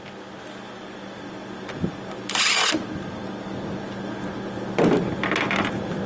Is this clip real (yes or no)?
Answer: yes